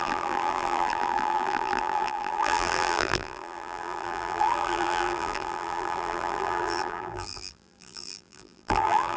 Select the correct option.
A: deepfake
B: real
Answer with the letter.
A